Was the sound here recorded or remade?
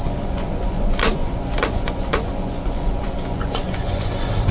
remade